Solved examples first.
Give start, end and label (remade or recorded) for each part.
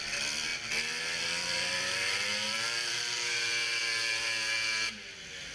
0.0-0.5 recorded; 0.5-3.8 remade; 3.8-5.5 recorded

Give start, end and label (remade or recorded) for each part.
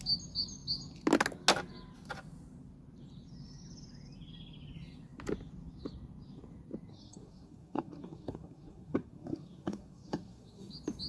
0.0-6.9 recorded; 6.9-10.7 remade; 10.7-11.1 recorded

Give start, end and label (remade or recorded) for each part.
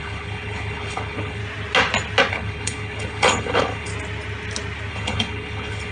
0.0-1.4 remade; 1.4-2.3 recorded; 2.3-3.9 remade; 3.9-4.9 recorded; 4.9-5.9 remade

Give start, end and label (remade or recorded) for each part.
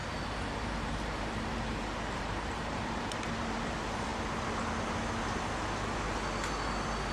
0.0-3.6 remade; 3.6-7.1 recorded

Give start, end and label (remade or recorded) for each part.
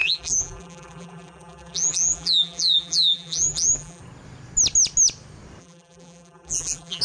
0.0-4.0 remade; 4.0-5.6 recorded; 5.6-7.0 remade